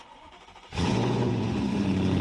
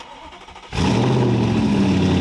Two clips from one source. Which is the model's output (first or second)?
first